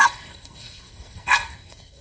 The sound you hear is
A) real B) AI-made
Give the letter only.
B